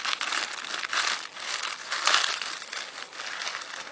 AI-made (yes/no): no